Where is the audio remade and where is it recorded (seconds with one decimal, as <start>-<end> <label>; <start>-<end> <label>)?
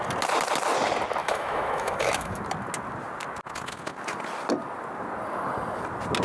0.0-1.2 recorded; 1.2-2.4 remade; 2.4-6.2 recorded